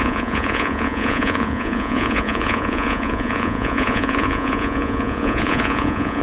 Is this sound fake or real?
fake